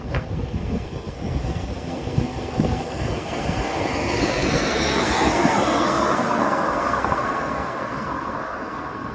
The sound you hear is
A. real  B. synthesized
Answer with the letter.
B